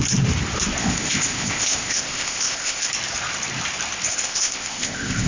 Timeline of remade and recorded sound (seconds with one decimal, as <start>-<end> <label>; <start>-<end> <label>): 0.0-0.8 recorded; 0.8-2.9 remade; 2.9-4.1 recorded; 4.1-5.3 remade